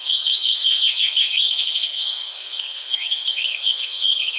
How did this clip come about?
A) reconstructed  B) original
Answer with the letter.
A